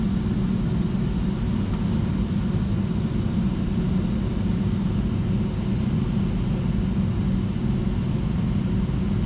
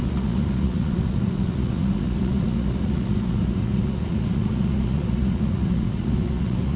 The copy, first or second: second